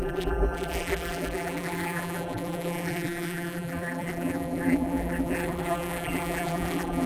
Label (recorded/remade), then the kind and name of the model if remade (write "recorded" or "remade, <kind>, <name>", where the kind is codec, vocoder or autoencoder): remade, vocoder, BigVGAN v2